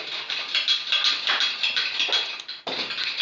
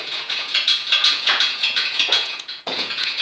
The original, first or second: first